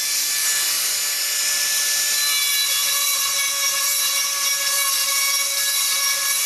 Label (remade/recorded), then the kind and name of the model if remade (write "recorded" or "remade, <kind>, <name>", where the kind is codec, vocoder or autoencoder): recorded